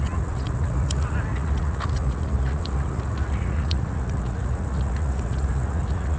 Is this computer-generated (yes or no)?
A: yes